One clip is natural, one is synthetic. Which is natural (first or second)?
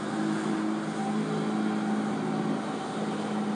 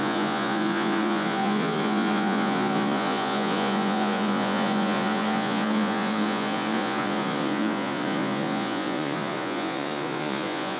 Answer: first